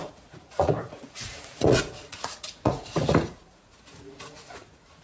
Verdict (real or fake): fake